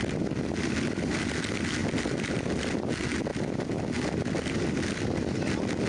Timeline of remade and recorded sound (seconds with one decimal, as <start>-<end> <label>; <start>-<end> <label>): 0.0-5.9 recorded